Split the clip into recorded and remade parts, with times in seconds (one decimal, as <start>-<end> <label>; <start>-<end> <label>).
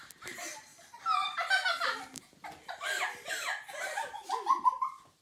0.0-5.2 remade